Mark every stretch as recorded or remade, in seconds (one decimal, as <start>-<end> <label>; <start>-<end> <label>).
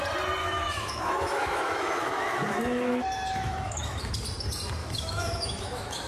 0.0-0.4 recorded; 0.4-4.1 remade; 4.1-4.8 recorded; 4.8-6.1 remade